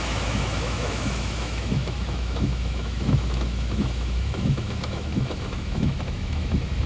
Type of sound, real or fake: fake